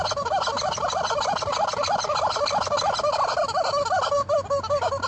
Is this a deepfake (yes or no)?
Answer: no